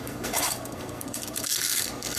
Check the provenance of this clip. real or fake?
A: fake